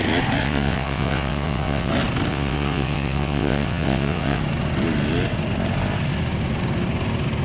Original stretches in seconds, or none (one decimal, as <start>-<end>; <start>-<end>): 0.0-0.4; 1.9-2.3; 4.4-7.4